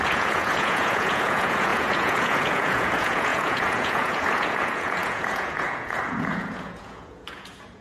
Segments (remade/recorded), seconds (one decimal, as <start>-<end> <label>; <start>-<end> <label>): 0.0-7.8 remade